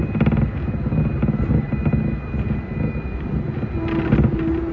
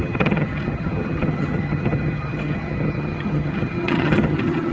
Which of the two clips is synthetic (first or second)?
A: second